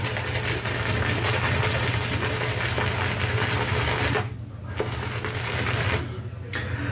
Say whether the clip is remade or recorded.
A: recorded